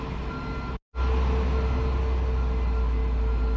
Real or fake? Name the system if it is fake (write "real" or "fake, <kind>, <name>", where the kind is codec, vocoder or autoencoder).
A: real